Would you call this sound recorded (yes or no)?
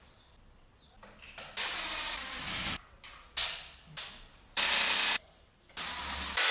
yes